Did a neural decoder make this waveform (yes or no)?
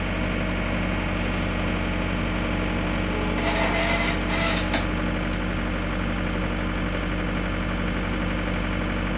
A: no